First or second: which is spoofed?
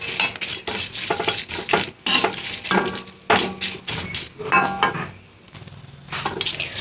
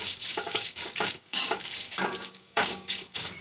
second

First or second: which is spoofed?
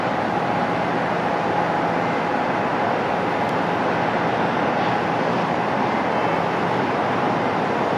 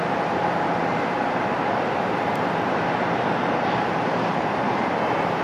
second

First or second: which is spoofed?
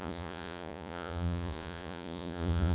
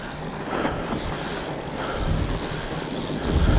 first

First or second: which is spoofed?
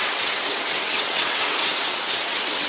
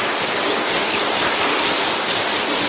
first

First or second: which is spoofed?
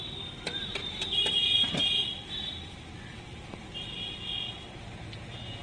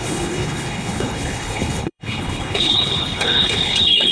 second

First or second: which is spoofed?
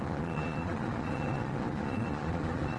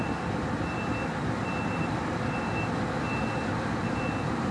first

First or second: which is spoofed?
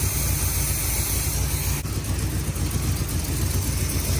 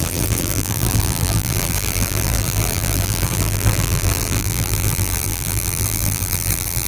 second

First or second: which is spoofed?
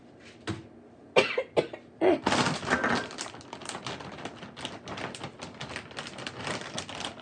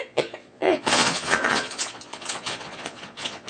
second